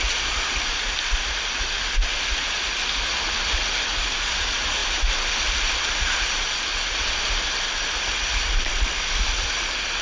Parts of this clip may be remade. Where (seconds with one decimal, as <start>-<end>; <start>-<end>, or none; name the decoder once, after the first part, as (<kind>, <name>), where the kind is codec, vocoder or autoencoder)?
none